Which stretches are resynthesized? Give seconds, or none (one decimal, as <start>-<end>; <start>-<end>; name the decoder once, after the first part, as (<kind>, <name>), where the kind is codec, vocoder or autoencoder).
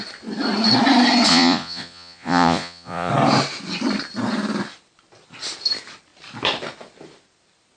1.3-3.1 (vocoder, Vocos)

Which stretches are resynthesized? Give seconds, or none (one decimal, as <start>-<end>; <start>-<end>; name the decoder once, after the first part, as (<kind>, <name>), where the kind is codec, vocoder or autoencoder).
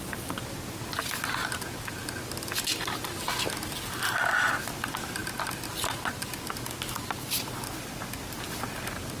5.2-7.8 (vocoder, BigVGAN v2)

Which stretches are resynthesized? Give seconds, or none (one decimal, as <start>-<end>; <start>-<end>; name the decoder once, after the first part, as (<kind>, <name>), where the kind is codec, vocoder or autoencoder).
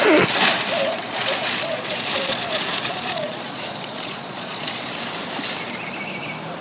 0.8-4.8 (vocoder, Vocos)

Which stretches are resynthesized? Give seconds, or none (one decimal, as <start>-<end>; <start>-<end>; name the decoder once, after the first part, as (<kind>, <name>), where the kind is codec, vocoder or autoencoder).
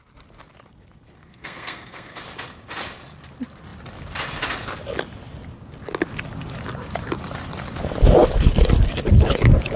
1.2-2.2 (codec, SNAC)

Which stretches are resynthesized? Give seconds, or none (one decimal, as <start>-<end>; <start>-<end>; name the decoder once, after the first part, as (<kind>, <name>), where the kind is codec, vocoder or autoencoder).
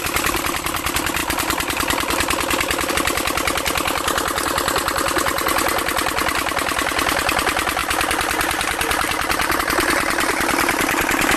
1.2-2.9 (vocoder, BigVGAN v2)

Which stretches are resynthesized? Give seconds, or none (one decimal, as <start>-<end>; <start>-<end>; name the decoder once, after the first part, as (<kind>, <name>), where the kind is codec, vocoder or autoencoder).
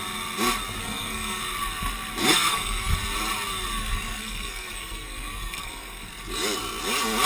0.8-1.4 (codec, SNAC); 2.2-2.9; 3.8-6.1